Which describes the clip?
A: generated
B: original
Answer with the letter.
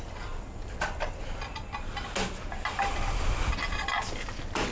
B